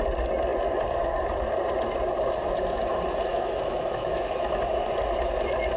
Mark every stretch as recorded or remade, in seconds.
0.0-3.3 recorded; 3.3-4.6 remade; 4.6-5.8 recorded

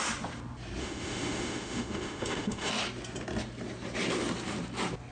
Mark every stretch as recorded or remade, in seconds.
0.0-0.8 recorded; 0.8-2.7 remade; 2.7-5.1 recorded

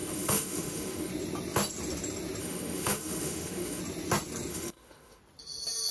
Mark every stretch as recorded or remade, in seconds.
0.0-1.1 remade; 1.1-2.4 recorded; 2.4-3.8 remade; 3.8-4.5 recorded; 4.5-5.2 remade; 5.2-5.9 recorded

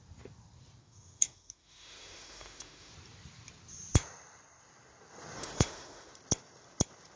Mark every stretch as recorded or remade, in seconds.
0.0-0.8 recorded; 0.8-2.9 remade; 2.9-5.4 recorded; 5.4-6.1 remade; 6.1-7.2 recorded

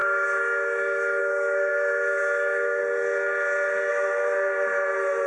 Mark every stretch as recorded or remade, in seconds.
0.0-2.8 remade; 2.8-3.9 recorded; 3.9-5.3 remade